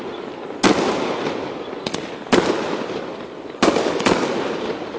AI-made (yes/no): no